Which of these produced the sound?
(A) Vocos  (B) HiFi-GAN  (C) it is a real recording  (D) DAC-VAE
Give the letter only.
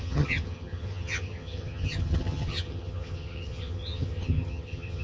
B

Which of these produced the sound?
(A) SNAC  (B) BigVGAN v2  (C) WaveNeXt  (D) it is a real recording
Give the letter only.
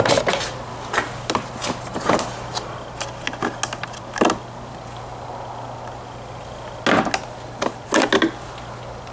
D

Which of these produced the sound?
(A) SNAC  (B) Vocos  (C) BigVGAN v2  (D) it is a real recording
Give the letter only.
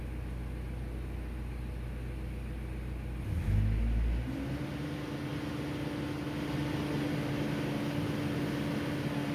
D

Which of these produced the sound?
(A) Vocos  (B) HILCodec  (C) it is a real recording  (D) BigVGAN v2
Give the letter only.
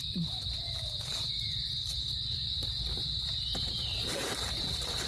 D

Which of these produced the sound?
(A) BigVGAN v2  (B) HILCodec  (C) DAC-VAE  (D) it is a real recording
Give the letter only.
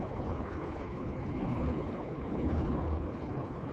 B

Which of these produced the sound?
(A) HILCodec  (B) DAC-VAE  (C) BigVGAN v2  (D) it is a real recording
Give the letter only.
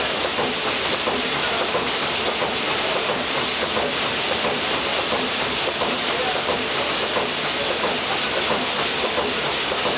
D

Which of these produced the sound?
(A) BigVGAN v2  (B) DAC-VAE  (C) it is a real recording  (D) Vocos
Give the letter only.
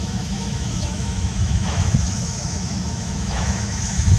B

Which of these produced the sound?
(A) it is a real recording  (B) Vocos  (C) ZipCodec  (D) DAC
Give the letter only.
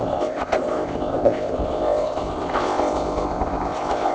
C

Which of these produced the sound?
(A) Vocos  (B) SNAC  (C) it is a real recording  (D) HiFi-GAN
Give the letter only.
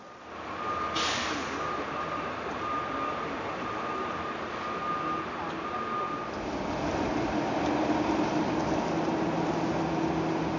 C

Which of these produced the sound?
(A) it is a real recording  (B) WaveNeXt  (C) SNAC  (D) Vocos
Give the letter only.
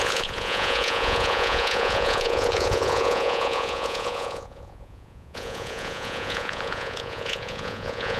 D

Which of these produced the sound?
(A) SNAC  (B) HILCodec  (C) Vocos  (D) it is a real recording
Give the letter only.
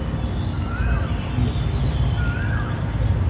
D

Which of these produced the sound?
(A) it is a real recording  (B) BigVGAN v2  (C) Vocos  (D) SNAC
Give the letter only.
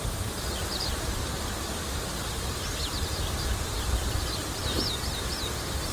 B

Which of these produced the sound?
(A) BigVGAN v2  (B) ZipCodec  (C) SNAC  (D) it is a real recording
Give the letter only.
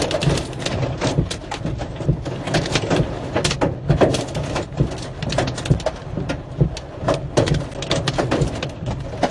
D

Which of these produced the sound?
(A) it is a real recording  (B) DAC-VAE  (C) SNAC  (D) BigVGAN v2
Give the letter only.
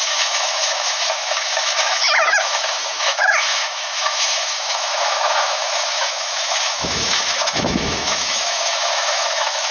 B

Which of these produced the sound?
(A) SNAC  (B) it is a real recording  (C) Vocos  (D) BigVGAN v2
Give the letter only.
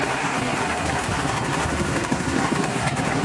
A